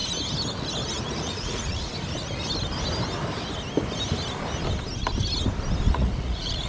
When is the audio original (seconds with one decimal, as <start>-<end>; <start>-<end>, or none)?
0.0-1.1; 1.9-5.9